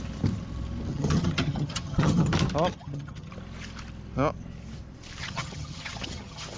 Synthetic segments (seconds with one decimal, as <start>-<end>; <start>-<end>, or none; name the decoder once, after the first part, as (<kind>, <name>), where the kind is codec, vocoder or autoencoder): 0.9-2.3 (vocoder, HiFi-GAN); 2.7-3.3; 5.2-6.6